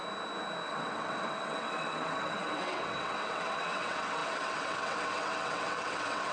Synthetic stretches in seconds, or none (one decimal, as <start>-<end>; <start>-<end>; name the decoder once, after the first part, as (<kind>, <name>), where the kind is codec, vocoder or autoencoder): 0.7-6.3 (vocoder, WaveNeXt)